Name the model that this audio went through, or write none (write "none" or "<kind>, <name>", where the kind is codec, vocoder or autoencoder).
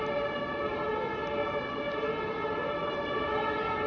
none